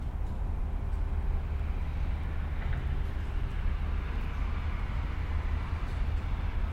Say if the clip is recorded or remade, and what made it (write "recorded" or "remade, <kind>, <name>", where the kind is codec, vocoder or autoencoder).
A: recorded